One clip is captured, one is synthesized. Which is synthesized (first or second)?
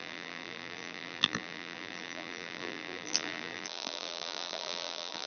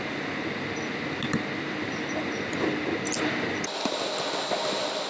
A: first